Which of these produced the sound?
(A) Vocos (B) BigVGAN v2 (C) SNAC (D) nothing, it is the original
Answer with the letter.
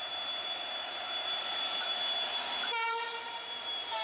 D